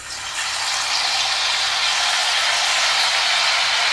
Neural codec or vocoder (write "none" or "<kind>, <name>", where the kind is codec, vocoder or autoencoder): none